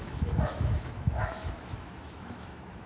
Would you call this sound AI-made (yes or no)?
yes